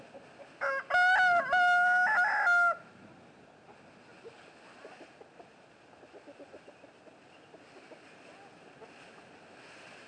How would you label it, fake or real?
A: real